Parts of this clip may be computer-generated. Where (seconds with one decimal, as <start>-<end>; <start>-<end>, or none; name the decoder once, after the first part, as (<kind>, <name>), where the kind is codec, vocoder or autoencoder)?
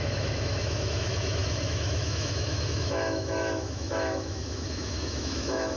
0.0-5.8 (autoencoder, DAC-VAE)